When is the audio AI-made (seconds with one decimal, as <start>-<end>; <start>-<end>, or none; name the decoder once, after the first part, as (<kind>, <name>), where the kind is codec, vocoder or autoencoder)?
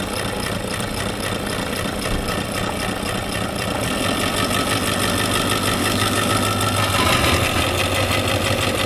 5.8-6.3 (codec, DAC)